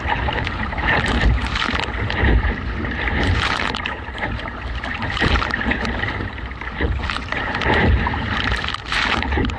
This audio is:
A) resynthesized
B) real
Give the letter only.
A